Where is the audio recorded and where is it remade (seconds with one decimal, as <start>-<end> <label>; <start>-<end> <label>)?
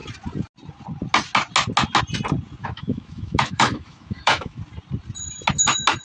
0.0-2.6 recorded; 2.6-4.6 remade; 4.6-6.0 recorded